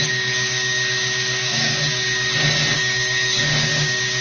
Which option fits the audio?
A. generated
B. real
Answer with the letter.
A